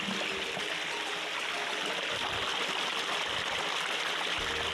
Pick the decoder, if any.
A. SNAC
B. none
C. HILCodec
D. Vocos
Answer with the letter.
B